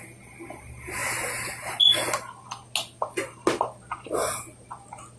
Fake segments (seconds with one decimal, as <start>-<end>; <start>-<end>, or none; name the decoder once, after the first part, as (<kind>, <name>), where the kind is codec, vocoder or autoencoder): none